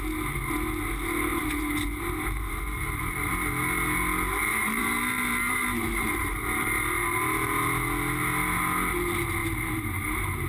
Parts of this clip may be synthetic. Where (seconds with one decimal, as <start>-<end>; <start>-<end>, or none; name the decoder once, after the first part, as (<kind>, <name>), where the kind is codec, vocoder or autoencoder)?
1.3-3.1 (vocoder, BigVGAN v2); 4.5-7.2; 9.4-10.5